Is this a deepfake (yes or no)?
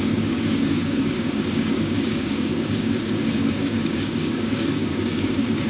yes